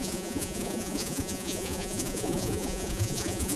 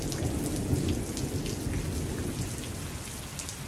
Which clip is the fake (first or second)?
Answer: first